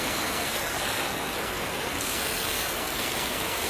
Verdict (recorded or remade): remade